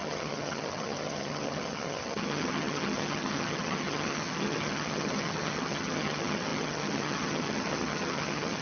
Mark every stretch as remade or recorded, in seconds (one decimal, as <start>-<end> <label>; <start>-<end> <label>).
0.0-8.6 remade